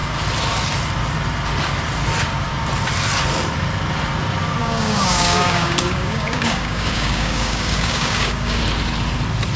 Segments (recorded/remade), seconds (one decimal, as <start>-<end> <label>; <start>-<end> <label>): 0.0-4.6 recorded; 4.6-8.6 remade; 8.6-9.6 recorded